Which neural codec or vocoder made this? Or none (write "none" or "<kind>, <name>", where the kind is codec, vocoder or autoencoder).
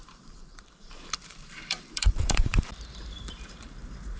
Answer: vocoder, BigVGAN v2